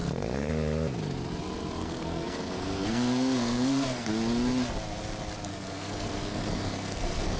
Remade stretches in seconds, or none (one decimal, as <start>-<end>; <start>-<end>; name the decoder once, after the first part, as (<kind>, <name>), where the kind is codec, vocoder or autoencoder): 0.0-0.5 (codec, SNAC); 1.8-4.1; 5.5-7.4